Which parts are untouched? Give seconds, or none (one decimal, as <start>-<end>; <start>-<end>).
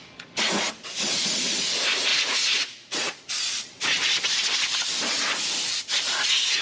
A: 0.0-2.1; 3.4-6.6